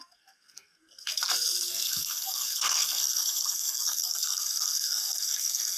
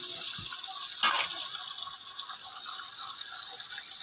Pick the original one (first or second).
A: second